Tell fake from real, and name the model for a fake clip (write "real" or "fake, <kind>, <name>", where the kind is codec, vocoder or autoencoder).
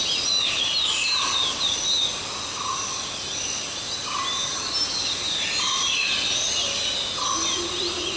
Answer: real